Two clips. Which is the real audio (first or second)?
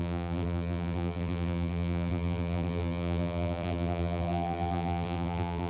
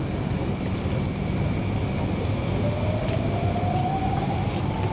second